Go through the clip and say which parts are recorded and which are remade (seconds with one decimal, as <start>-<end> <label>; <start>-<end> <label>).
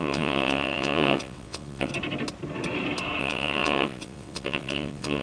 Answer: 0.0-1.9 remade; 1.9-3.2 recorded; 3.2-5.2 remade